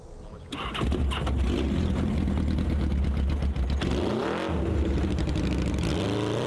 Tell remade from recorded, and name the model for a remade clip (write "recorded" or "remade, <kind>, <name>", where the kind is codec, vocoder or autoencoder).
recorded